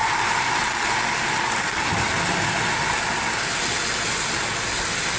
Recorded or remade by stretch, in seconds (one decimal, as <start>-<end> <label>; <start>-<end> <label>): 0.0-5.2 recorded